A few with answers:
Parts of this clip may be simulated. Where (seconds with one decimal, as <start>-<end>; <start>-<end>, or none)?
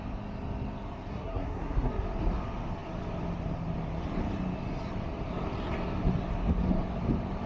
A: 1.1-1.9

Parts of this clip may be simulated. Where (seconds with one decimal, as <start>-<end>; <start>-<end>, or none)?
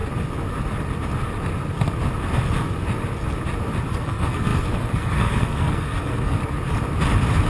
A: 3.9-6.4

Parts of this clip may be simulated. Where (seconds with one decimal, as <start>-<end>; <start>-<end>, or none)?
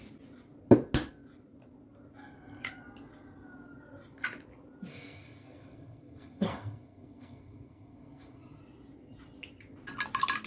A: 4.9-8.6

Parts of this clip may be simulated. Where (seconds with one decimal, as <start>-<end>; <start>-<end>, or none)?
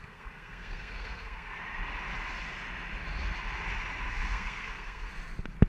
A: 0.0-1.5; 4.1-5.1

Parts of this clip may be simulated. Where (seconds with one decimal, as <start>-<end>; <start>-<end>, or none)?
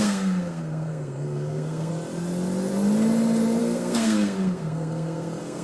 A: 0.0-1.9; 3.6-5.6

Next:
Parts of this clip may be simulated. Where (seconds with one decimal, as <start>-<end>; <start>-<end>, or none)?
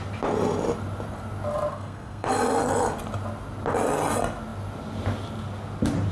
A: 1.7-2.3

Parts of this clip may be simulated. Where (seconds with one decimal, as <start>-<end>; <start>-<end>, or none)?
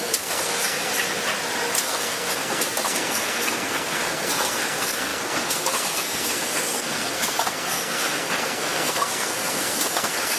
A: 0.0-0.9; 1.7-10.4